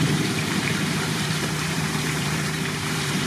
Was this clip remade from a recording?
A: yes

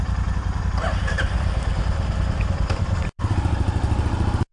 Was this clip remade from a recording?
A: yes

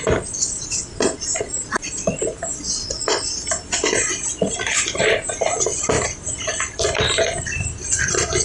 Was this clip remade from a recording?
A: yes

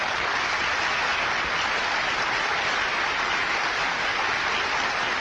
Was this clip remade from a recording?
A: no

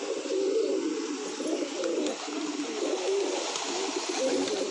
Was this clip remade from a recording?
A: no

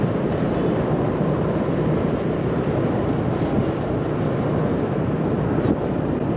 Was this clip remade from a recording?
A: yes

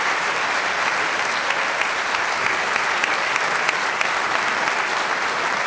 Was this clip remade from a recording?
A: yes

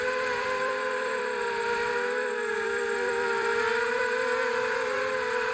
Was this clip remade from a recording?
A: yes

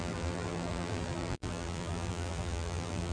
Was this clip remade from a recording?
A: yes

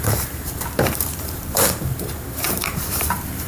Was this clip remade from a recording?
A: yes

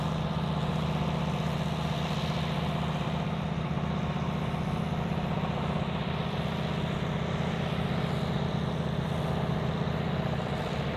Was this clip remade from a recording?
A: yes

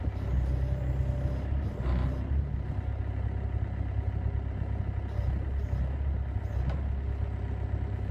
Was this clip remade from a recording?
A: no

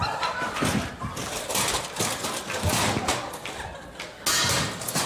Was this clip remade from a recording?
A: no